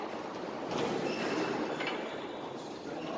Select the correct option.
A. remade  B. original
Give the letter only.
B